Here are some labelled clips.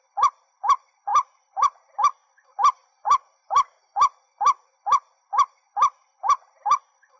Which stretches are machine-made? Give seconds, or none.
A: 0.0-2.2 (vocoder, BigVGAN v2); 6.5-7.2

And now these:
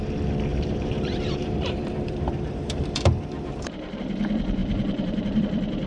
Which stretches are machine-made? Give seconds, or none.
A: 0.5-4.0 (vocoder, BigVGAN v2); 4.6-5.4

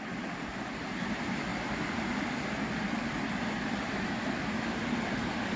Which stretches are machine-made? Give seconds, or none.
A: 1.5-2.2 (vocoder, BigVGAN v2)

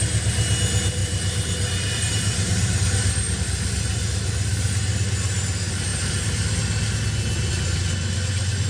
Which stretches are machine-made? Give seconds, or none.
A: 1.0-3.4 (vocoder, BigVGAN v2)